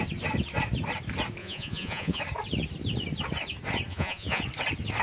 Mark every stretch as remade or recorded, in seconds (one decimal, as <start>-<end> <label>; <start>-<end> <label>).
0.0-1.4 recorded; 1.4-2.2 remade; 2.2-3.9 recorded; 3.9-4.4 remade; 4.4-5.0 recorded